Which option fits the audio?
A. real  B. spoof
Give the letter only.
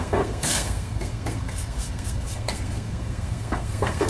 B